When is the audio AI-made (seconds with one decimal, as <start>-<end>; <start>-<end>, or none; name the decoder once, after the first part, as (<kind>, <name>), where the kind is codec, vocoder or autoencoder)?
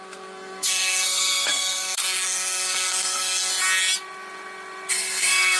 0.0-3.5 (codec, SNAC); 4.9-5.6